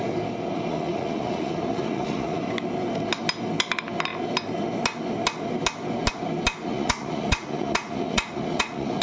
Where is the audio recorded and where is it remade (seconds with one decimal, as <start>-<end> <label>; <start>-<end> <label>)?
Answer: 0.0-0.7 recorded; 0.7-2.4 remade; 2.4-6.6 recorded; 6.6-9.0 remade